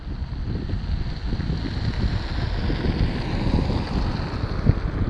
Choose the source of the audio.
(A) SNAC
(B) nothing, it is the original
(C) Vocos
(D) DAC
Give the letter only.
B